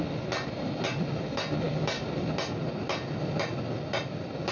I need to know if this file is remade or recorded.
recorded